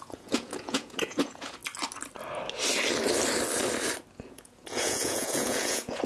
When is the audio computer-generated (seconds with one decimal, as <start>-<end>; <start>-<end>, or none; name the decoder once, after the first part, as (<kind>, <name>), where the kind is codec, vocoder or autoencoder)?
0.0-1.6 (vocoder, Vocos); 4.3-6.1